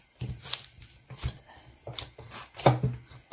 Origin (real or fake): real